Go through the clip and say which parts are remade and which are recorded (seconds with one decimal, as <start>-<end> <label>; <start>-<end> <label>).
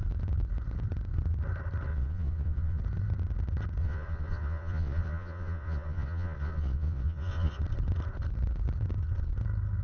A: 0.0-1.9 recorded; 1.9-2.8 remade; 2.8-3.8 recorded; 3.8-7.6 remade; 7.6-9.8 recorded